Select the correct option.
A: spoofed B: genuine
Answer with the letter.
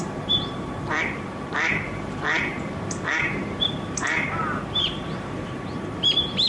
A